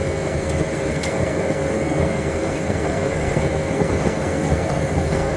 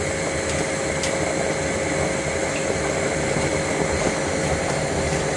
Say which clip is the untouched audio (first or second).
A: second